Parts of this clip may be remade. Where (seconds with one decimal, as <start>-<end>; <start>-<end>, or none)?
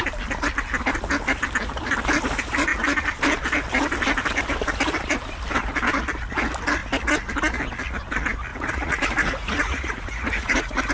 8.5-10.9